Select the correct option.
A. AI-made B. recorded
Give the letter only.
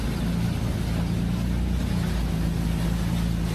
B